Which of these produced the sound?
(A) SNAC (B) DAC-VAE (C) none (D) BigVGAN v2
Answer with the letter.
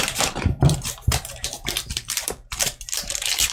D